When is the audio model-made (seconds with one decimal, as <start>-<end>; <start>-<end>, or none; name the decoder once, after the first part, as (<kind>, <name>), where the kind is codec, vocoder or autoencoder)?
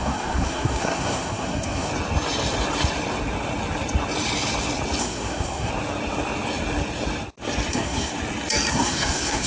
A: 0.0-1.9 (codec, SNAC); 5.0-5.7; 7.7-8.1; 8.7-9.5